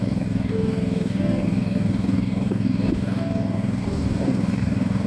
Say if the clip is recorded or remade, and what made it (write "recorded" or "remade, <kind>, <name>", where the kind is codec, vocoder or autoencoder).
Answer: remade, codec, DAC